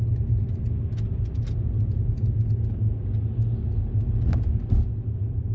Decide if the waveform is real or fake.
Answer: real